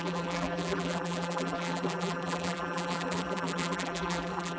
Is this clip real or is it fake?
fake